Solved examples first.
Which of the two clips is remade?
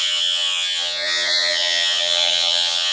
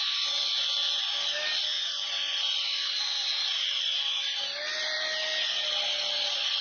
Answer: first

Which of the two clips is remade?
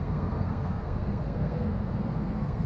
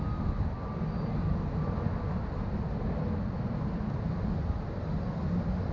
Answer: first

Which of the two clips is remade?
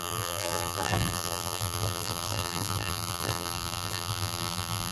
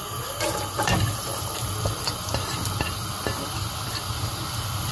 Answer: first